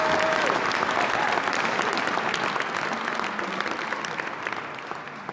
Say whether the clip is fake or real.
real